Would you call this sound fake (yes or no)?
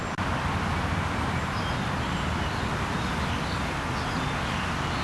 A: no